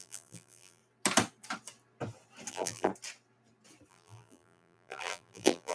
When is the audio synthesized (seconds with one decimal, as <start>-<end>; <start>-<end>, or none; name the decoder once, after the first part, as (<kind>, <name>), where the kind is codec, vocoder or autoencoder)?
0.0-0.8 (vocoder, BigVGAN v2); 2.5-2.9; 3.9-5.7